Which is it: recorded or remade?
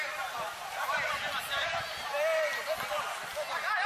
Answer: recorded